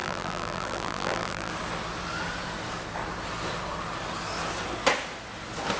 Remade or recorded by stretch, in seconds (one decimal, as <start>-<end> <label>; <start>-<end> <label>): 0.0-1.5 remade; 1.5-5.8 recorded